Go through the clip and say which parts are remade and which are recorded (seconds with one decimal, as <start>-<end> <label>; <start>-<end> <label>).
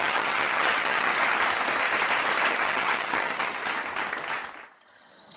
0.0-1.1 remade; 1.1-2.5 recorded; 2.5-3.6 remade; 3.6-4.8 recorded; 4.8-5.4 remade